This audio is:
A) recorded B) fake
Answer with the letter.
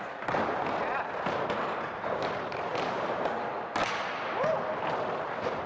A